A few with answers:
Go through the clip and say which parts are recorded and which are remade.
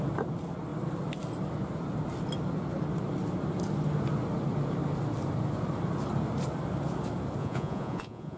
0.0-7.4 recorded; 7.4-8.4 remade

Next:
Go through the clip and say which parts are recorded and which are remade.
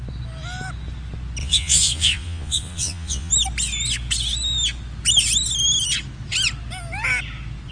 0.0-1.4 recorded; 1.4-3.3 remade; 3.3-7.7 recorded